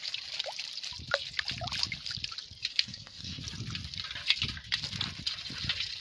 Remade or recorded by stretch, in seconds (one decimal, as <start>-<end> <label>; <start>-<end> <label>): 0.0-2.7 recorded; 2.7-3.4 remade; 3.4-6.0 recorded